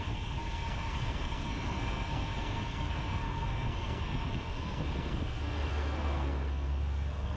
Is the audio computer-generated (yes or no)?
yes